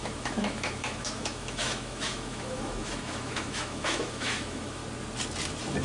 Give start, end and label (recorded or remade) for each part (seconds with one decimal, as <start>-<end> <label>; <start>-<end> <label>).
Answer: 0.0-4.8 remade; 4.8-5.8 recorded